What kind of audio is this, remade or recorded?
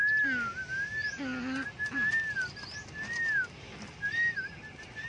recorded